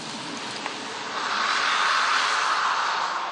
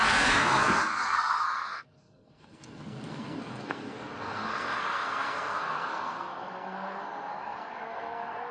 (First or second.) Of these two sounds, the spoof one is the second